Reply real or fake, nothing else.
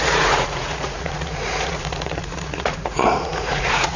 fake